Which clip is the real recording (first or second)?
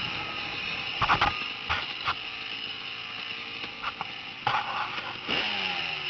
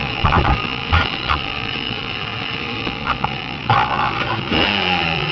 first